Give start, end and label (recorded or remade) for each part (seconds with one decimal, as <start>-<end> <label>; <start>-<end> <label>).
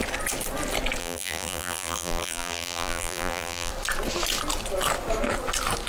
0.0-1.0 recorded; 1.0-3.7 remade; 3.7-5.9 recorded